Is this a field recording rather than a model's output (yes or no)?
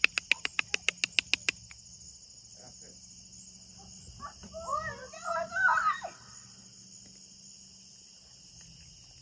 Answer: yes